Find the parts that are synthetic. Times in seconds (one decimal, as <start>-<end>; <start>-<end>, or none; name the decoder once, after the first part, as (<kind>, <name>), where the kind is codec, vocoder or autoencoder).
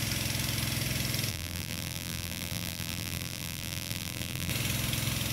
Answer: 1.3-4.5 (vocoder, BigVGAN v2)